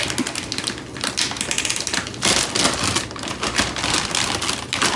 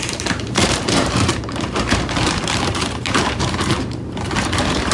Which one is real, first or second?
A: first